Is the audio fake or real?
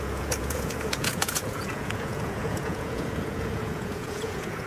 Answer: fake